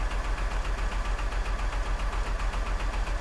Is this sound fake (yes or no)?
no